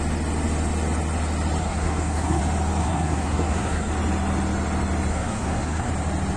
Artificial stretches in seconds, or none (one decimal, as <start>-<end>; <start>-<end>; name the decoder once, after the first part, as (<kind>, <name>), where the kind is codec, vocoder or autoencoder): 1.6-2.4 (codec, SNAC); 2.8-3.9; 5.1-5.9